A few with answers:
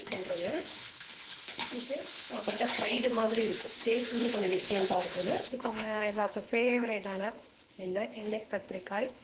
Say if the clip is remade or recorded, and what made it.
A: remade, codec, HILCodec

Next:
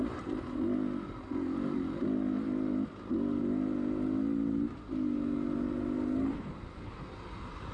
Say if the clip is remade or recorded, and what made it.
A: recorded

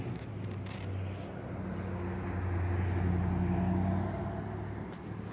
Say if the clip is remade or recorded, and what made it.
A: recorded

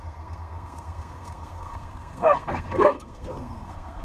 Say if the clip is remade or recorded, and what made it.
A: remade, codec, SNAC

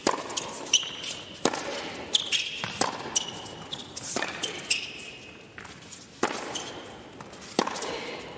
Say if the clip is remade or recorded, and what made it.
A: recorded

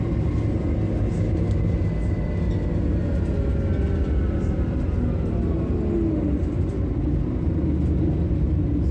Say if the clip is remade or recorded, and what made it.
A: recorded